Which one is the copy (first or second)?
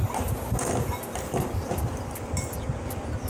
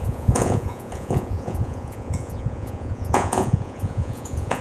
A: second